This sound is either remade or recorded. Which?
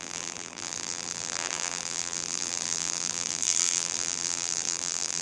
remade